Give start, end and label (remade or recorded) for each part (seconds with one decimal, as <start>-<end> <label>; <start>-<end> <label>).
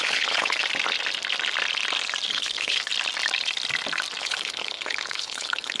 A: 0.0-0.6 remade; 0.6-2.3 recorded; 2.3-2.9 remade; 2.9-4.2 recorded; 4.2-5.8 remade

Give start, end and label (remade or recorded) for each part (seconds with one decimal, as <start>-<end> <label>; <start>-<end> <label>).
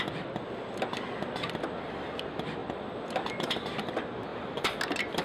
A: 0.0-2.6 recorded; 2.6-3.3 remade; 3.3-5.2 recorded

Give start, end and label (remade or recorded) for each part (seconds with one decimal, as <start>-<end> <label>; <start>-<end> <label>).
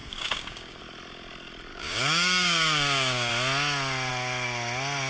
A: 0.0-0.8 remade; 0.8-1.7 recorded; 1.7-3.3 remade; 3.3-5.1 recorded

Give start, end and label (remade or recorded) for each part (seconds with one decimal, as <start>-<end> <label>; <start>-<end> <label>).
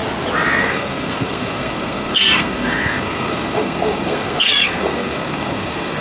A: 0.0-0.6 recorded; 0.6-6.0 remade